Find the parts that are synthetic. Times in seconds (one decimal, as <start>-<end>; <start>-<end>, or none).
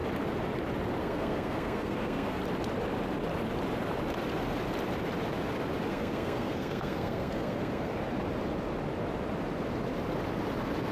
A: 1.0-2.4; 5.9-7.9